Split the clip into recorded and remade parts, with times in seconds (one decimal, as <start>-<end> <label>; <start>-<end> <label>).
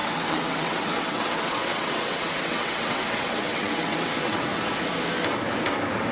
0.0-4.5 remade; 4.5-6.1 recorded